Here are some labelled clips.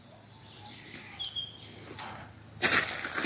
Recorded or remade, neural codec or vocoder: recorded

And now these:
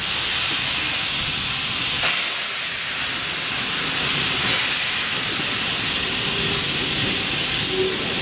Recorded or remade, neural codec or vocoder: recorded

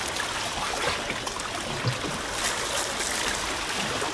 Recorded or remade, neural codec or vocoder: recorded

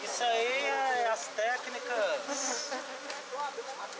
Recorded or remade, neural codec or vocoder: recorded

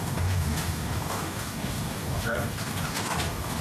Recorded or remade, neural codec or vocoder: remade, codec, DAC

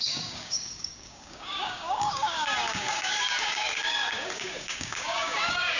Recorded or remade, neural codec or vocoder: remade, codec, DAC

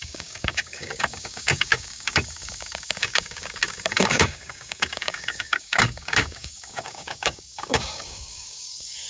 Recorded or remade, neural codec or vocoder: remade, codec, DAC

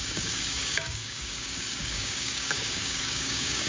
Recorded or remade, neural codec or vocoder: remade, codec, DAC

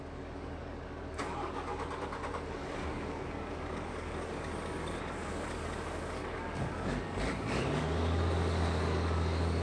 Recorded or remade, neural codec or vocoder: remade, codec, DAC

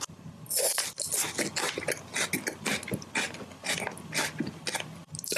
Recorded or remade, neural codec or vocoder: recorded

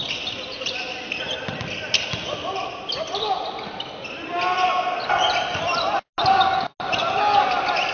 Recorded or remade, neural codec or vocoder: recorded